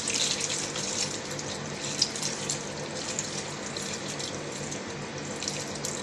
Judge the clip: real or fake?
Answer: real